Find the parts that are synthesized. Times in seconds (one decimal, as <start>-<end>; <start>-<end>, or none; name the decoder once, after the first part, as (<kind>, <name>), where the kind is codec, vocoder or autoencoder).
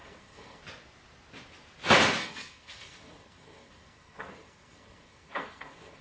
0.0-0.6 (codec, SNAC); 2.2-6.0